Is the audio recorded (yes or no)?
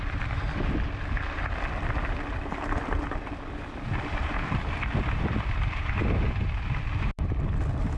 no